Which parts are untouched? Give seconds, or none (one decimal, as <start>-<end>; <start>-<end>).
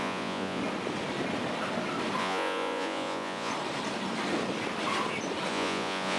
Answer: 0.6-2.2; 3.5-5.5